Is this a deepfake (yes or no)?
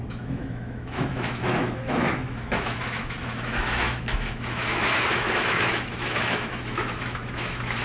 yes